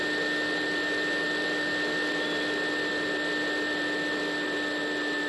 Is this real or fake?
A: real